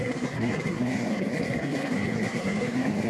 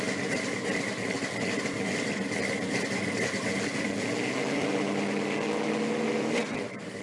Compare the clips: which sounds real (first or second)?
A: second